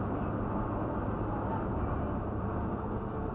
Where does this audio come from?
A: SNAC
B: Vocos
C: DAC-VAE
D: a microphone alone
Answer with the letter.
D